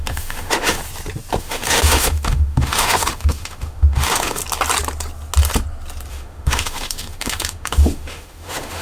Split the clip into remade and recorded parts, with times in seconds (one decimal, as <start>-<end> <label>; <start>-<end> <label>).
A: 0.0-0.8 remade; 0.8-1.4 recorded; 1.4-4.4 remade; 4.4-6.1 recorded; 6.1-8.8 remade